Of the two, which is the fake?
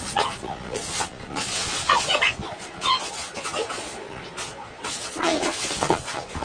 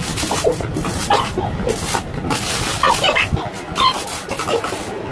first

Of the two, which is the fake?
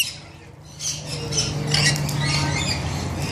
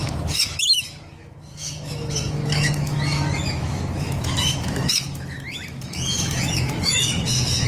second